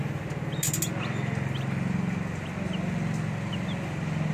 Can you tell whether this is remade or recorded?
recorded